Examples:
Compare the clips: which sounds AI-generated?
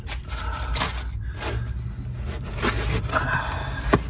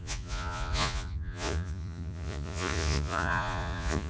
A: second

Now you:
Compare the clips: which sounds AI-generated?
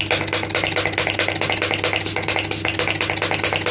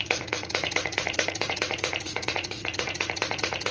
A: second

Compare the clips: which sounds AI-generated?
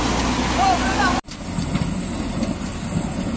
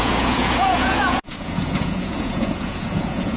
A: second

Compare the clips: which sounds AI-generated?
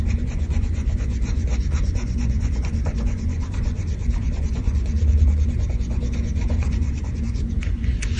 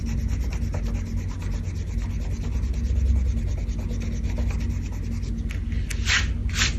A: first